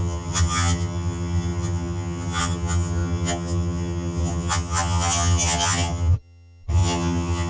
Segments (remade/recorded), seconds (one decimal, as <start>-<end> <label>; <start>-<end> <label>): 0.0-7.5 remade